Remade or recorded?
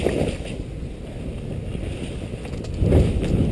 recorded